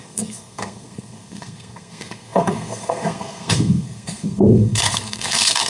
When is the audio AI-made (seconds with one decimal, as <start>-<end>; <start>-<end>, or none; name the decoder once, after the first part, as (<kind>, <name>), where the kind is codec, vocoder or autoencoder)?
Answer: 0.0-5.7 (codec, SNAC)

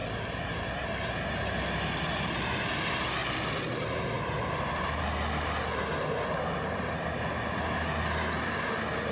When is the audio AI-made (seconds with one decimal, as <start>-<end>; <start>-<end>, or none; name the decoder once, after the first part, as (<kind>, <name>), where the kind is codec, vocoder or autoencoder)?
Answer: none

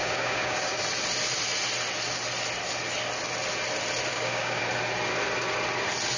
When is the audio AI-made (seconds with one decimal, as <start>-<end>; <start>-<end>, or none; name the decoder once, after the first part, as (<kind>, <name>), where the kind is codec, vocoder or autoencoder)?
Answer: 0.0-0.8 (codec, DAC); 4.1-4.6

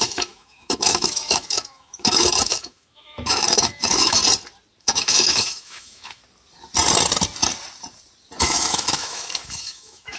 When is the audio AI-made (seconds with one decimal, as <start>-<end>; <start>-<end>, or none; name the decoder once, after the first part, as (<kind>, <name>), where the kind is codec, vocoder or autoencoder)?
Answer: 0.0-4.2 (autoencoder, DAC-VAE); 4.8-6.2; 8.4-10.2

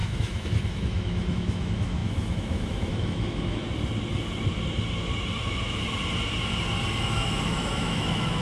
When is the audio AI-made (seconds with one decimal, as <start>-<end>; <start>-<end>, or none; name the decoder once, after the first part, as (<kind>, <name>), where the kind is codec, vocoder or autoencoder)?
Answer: 0.0-3.6 (autoencoder, DAC-VAE); 7.0-8.4